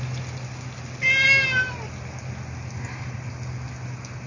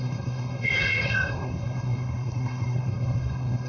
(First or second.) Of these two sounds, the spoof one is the second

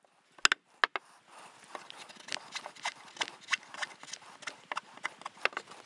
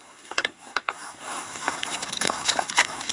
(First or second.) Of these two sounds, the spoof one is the second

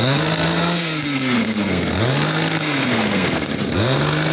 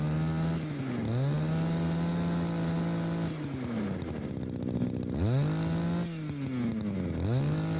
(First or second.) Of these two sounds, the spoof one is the first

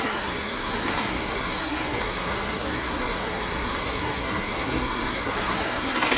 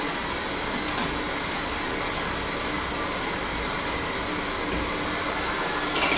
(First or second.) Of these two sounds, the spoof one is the first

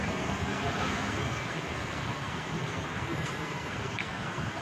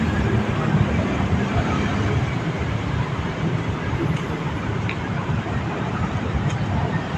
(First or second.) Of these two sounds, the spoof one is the first